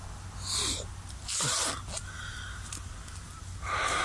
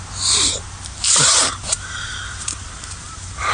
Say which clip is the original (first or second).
first